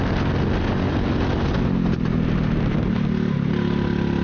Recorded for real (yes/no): yes